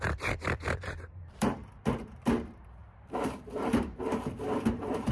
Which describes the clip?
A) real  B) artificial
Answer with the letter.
B